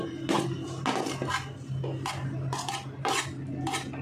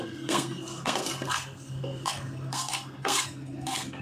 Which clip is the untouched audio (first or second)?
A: first